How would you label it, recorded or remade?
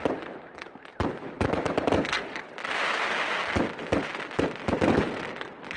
recorded